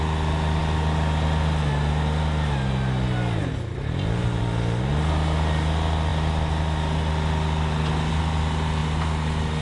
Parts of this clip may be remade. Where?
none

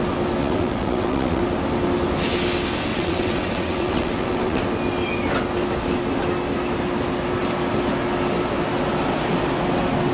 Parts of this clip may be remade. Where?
0.4-1.4 (vocoder, WaveNeXt); 2.9-4.6

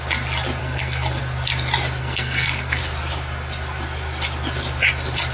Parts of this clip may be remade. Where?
0.6-1.2 (codec, SNAC); 2.0-2.8